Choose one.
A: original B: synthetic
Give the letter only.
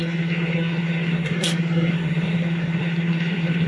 B